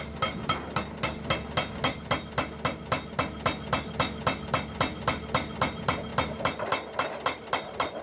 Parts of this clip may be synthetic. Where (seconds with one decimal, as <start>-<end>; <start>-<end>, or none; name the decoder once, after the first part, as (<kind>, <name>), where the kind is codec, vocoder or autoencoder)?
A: none

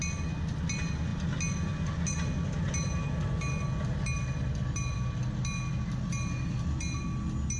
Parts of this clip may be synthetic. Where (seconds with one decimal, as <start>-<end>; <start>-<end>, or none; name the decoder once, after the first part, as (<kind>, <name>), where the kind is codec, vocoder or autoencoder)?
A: none